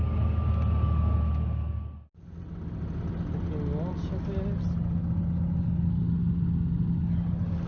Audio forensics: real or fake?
real